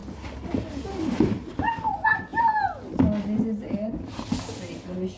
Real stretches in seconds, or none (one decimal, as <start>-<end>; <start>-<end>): 0.0-5.2